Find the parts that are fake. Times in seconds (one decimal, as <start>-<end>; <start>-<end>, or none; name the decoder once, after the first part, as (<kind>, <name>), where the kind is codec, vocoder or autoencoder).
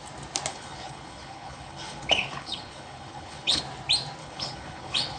0.5-3.6 (codec, HILCodec); 4.2-5.2